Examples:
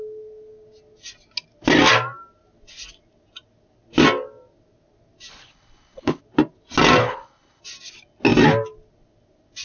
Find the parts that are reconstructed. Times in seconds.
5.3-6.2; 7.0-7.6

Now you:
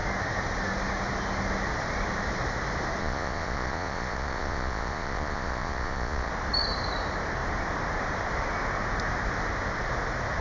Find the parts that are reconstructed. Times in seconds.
3.0-6.3

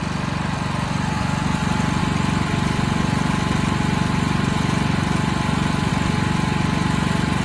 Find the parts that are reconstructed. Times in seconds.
2.0-5.9

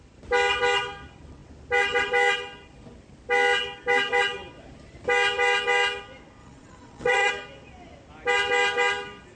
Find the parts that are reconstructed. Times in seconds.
6.4-7.3

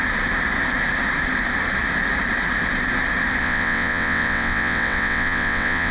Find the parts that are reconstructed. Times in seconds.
3.4-5.9